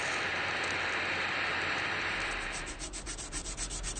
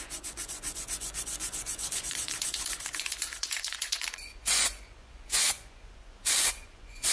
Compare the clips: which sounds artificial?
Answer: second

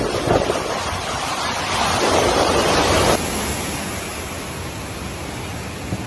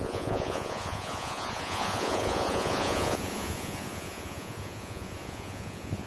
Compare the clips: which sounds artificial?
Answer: second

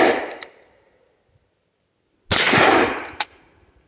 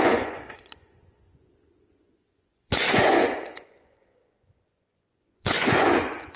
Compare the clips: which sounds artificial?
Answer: second